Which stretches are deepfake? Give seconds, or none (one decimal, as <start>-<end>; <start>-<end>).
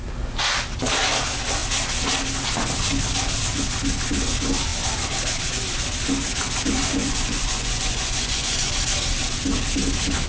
7.0-8.7